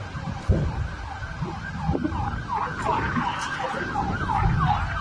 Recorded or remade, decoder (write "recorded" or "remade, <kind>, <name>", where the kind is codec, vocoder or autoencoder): recorded